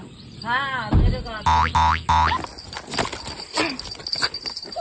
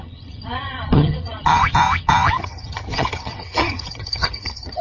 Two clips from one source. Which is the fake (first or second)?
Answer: second